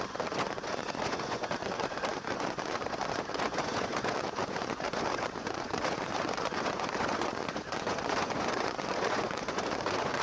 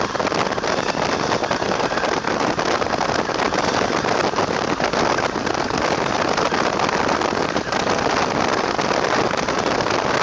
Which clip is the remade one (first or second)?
first